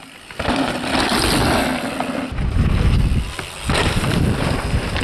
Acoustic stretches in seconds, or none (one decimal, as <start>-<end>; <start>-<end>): 0.0-5.0